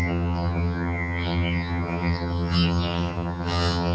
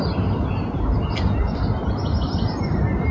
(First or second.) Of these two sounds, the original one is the second